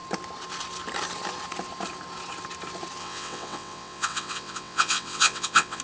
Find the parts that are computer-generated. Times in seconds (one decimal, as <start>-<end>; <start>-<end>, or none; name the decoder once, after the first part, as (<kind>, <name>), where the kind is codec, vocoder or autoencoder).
3.0-5.8 (vocoder, WaveNeXt)